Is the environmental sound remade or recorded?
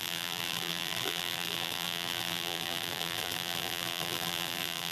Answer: remade